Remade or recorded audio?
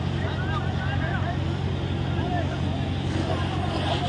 recorded